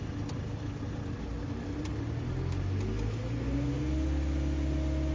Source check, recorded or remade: recorded